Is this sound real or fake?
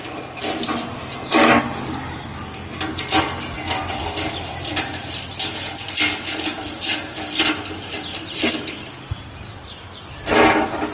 real